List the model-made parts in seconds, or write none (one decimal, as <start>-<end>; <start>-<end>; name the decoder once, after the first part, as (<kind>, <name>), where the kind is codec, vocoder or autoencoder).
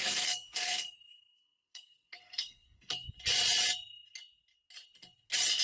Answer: 0.0-3.1 (codec, SNAC)